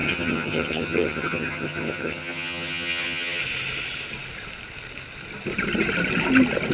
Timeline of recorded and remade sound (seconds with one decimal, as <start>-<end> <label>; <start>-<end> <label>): 0.0-3.4 remade; 3.4-6.7 recorded

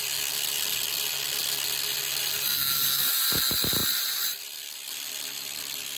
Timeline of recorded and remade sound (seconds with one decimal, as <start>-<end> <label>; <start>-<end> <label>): 0.0-3.8 recorded; 3.8-6.0 remade

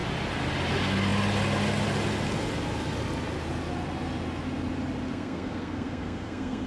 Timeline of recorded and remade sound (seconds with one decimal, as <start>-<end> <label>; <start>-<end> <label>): 0.0-5.1 recorded; 5.1-6.7 remade

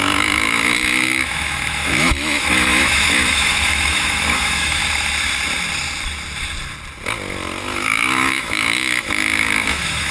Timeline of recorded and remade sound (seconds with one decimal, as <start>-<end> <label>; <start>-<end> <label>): 0.0-4.8 remade; 4.8-7.6 recorded; 7.6-10.1 remade

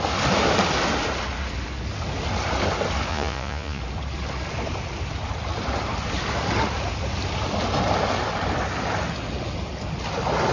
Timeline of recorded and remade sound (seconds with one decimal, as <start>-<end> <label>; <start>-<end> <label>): 0.0-3.1 recorded; 3.1-3.8 remade; 3.8-10.5 recorded

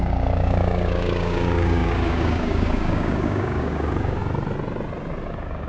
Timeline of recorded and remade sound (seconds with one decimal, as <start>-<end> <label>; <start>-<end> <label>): 0.0-4.2 remade; 4.2-5.3 recorded; 5.3-5.7 remade